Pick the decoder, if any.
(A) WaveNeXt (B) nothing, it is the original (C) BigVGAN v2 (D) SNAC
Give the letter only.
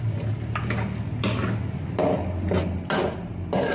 B